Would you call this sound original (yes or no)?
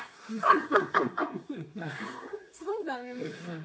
no